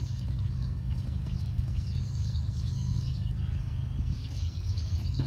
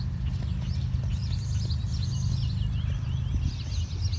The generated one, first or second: first